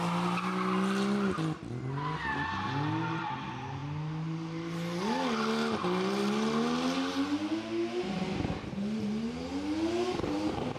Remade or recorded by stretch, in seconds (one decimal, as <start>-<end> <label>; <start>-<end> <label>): 0.0-10.8 recorded